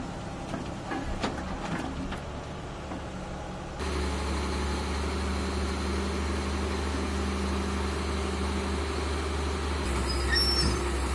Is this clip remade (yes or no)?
no